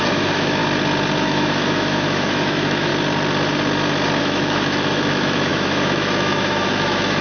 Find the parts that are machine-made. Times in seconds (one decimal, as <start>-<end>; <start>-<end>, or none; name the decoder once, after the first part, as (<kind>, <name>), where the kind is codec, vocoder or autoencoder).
0.0-0.6 (autoencoder, DAC-VAE); 1.2-2.9; 4.2-7.2